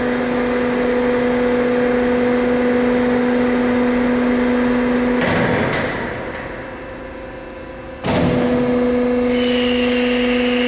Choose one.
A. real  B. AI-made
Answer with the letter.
A